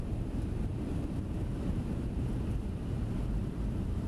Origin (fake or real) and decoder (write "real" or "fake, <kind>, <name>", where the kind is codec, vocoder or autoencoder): fake, vocoder, BigVGAN v2